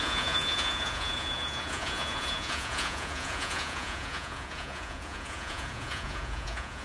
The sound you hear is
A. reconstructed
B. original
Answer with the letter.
A